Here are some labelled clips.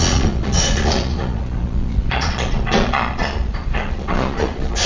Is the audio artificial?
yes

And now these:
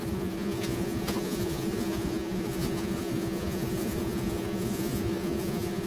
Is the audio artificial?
yes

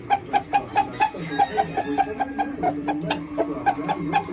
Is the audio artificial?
no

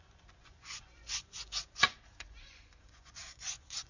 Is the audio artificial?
yes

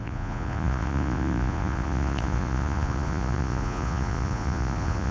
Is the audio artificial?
yes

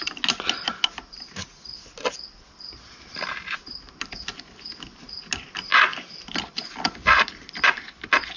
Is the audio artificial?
no